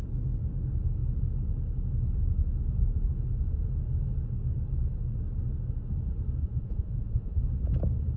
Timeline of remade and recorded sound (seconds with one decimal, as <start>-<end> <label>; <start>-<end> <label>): 0.0-6.4 recorded; 6.4-7.4 remade; 7.4-8.2 recorded